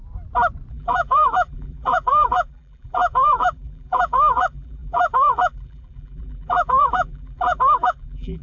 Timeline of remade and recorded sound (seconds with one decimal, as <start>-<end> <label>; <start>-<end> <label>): 0.0-0.7 recorded; 0.7-8.4 remade